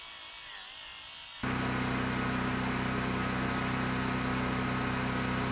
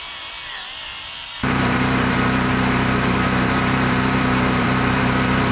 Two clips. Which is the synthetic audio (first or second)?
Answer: second